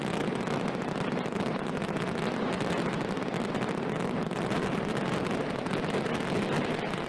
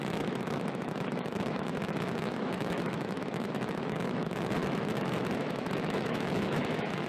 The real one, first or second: first